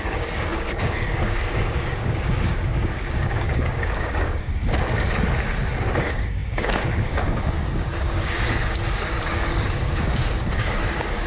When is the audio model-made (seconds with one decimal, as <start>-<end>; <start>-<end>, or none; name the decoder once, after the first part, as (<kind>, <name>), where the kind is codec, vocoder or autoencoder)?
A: 0.0-4.5 (codec, DAC); 6.0-11.3